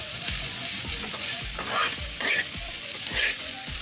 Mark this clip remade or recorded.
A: remade